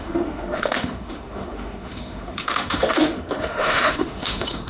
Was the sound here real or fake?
fake